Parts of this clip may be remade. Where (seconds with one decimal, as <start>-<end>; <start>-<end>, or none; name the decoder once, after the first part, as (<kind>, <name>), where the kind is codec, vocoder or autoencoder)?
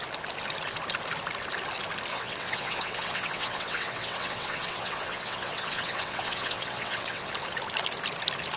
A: 2.1-7.3 (vocoder, WaveNeXt)